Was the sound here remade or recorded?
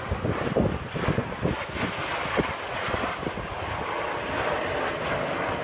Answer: recorded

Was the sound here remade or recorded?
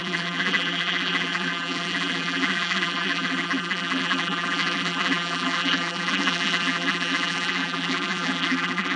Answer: remade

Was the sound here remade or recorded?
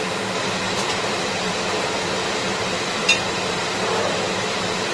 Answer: remade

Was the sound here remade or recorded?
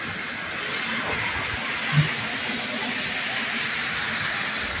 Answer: recorded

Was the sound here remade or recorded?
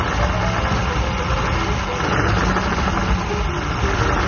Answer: recorded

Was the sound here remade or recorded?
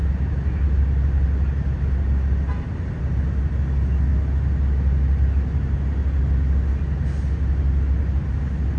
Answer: recorded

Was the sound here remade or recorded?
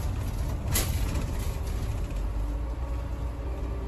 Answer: recorded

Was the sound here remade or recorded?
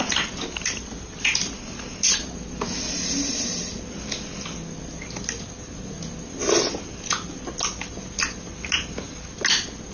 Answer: recorded